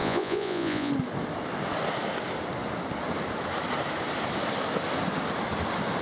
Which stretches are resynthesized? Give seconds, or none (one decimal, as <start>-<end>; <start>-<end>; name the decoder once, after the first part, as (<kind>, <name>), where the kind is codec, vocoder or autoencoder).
0.0-0.9 (vocoder, Vocos)